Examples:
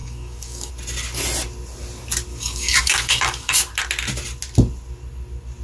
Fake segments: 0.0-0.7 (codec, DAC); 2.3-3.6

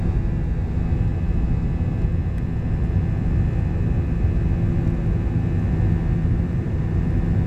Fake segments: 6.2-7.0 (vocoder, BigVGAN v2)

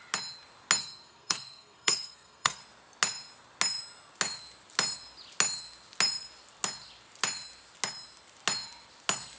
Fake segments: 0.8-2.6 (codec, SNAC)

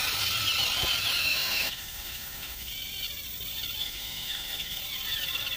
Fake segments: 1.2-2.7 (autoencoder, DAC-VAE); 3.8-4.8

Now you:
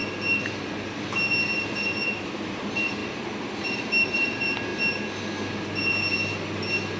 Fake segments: 1.6-4.7 (vocoder, BigVGAN v2)

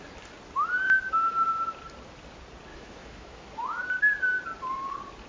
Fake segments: 2.7-3.8 (autoencoder, DAC-VAE)